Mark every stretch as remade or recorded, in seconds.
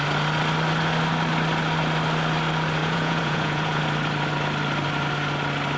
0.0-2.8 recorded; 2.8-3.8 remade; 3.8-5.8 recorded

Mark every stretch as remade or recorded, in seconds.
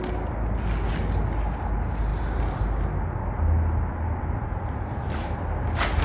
0.0-6.0 recorded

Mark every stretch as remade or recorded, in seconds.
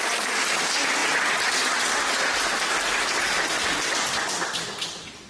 0.0-5.3 recorded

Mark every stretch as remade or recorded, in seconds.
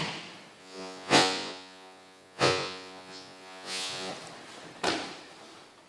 0.0-0.6 recorded; 0.6-4.1 remade; 4.1-5.9 recorded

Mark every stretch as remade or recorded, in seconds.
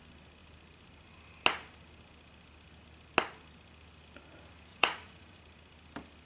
0.0-4.7 recorded; 4.7-5.4 remade; 5.4-6.3 recorded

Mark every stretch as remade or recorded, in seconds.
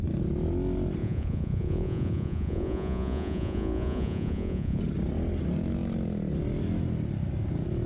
0.0-1.0 recorded; 1.0-4.8 remade; 4.8-7.9 recorded